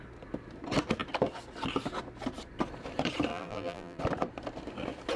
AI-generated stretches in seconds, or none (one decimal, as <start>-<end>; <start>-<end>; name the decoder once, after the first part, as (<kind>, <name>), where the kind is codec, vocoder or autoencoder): 3.3-4.0 (vocoder, BigVGAN v2)